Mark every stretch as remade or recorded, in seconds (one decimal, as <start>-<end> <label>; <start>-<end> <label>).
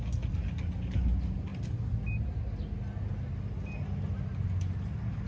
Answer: 0.0-5.3 recorded